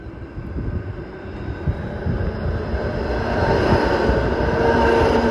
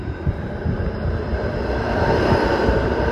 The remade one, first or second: second